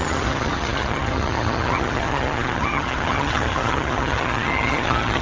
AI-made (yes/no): yes